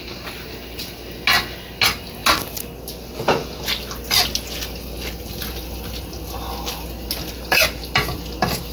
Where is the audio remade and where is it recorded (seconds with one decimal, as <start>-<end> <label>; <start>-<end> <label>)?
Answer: 0.0-8.7 recorded